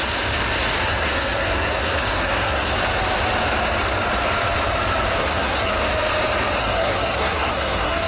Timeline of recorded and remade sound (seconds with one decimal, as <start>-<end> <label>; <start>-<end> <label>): 0.0-1.0 recorded; 1.0-2.7 remade; 2.7-5.2 recorded; 5.2-5.7 remade; 5.7-6.6 recorded; 6.6-8.1 remade